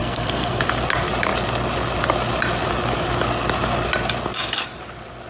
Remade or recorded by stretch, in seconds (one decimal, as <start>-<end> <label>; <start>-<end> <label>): 0.0-0.6 remade; 0.6-5.3 recorded